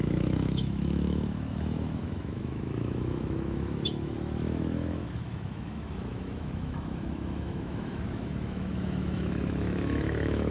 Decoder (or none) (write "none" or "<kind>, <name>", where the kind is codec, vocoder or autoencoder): autoencoder, DAC-VAE